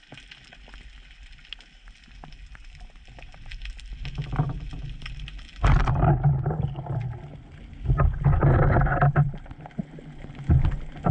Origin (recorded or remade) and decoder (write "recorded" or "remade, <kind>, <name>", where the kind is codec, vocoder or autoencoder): recorded